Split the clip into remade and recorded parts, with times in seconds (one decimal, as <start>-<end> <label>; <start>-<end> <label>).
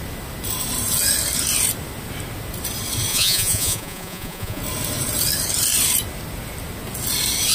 0.0-3.1 recorded; 3.1-4.6 remade; 4.6-7.5 recorded